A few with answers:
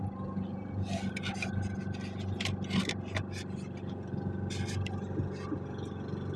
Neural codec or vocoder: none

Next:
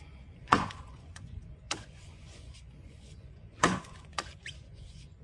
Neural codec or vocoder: vocoder, Vocos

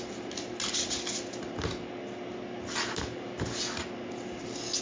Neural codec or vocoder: none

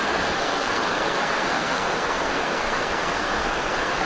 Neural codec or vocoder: codec, SNAC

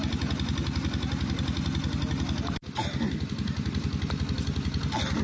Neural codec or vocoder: none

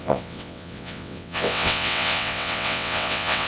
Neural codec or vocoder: vocoder, WaveNeXt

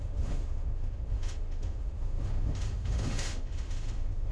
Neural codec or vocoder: autoencoder, DAC-VAE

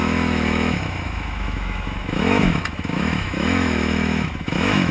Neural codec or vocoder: autoencoder, DAC-VAE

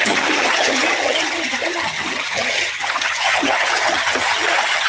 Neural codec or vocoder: vocoder, HiFi-GAN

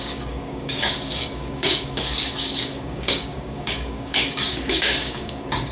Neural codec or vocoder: codec, DAC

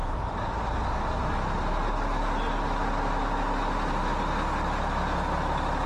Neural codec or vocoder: none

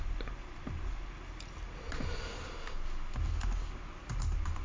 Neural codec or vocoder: none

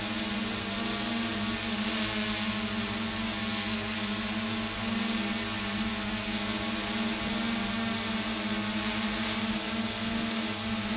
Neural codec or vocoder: none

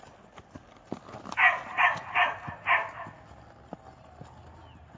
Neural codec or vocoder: none